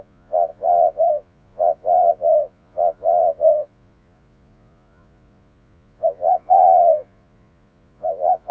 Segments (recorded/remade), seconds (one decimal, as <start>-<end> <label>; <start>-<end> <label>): 0.0-8.5 remade